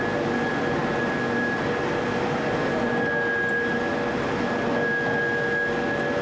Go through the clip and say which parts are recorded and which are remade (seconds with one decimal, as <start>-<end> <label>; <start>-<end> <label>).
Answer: 0.0-6.2 recorded